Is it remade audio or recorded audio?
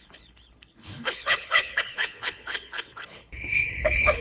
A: remade